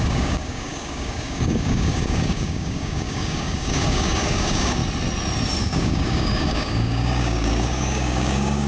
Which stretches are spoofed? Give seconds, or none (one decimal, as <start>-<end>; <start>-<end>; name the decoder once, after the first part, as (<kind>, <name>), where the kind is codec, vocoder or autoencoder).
0.0-4.8 (codec, DAC); 5.6-8.7

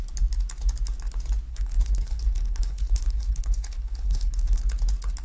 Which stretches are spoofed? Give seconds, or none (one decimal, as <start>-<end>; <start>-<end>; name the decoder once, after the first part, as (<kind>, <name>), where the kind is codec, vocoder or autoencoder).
1.5-4.6 (codec, HILCodec)